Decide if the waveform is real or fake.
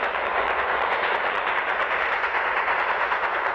fake